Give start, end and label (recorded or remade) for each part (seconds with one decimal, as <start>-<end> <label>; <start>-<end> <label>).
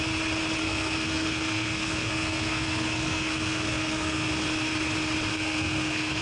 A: 0.0-0.6 recorded; 0.6-4.3 remade; 4.3-5.3 recorded; 5.3-6.2 remade